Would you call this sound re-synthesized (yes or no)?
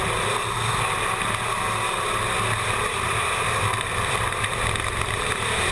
no